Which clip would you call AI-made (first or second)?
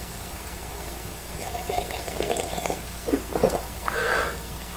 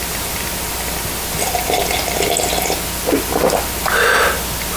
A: first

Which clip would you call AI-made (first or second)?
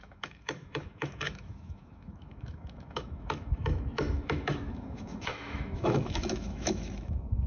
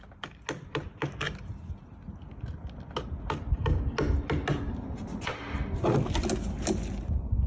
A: first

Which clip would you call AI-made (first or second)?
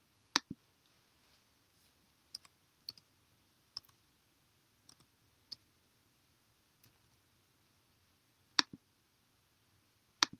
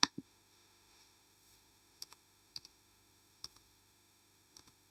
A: second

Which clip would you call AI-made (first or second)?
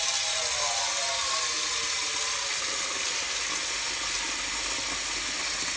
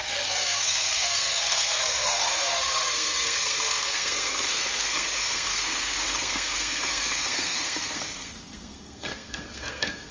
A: second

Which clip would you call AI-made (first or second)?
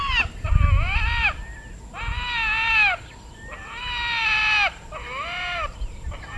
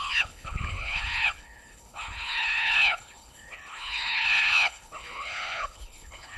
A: second